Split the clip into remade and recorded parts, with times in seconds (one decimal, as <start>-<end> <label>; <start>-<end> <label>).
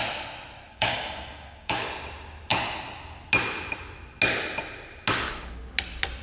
0.0-0.7 recorded; 0.7-1.9 remade; 1.9-6.2 recorded